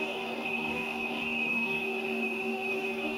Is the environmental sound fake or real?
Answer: fake